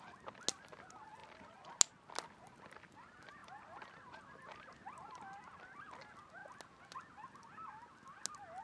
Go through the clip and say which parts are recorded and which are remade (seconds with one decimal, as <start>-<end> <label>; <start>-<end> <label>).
0.0-8.6 recorded